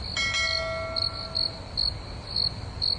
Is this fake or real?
real